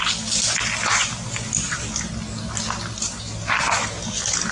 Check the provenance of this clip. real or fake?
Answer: real